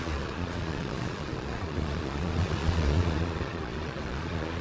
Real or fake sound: fake